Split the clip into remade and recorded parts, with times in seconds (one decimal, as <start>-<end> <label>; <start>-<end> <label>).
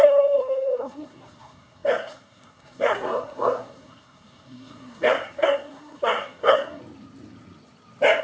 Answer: 0.0-6.8 remade; 6.8-8.2 recorded